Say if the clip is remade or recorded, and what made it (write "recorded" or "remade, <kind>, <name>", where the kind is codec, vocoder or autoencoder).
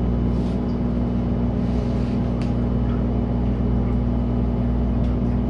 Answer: recorded